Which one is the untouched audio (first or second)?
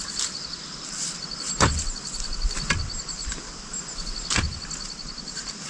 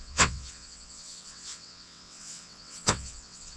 first